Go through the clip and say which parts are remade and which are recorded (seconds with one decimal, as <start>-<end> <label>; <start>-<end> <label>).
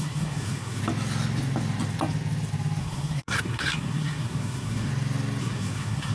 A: 0.0-0.8 remade; 0.8-2.8 recorded; 2.8-4.9 remade; 4.9-5.4 recorded; 5.4-6.1 remade